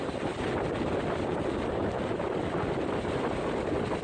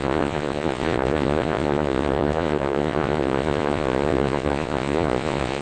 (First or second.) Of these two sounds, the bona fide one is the first